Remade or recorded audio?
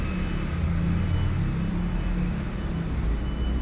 recorded